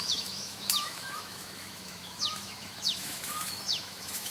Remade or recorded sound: remade